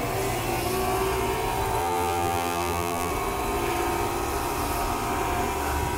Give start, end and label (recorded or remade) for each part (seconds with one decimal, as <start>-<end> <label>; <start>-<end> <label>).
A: 0.0-1.8 recorded; 1.8-3.1 remade; 3.1-6.0 recorded